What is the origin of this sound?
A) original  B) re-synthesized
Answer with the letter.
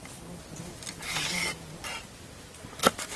A